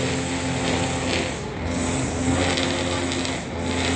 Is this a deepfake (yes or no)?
no